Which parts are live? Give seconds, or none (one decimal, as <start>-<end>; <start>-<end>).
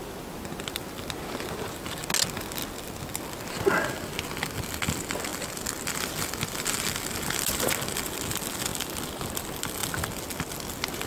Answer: 0.0-11.1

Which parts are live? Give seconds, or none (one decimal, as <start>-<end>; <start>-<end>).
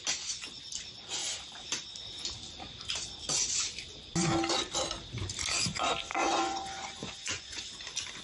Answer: 0.0-6.1; 7.7-8.2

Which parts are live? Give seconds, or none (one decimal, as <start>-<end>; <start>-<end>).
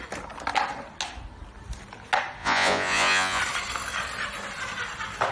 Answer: 0.0-2.4; 3.4-5.3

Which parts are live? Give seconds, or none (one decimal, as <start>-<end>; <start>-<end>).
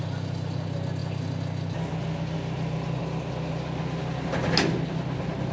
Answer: 0.0-5.5